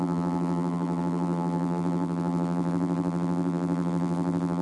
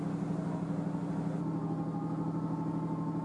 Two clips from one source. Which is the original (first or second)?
second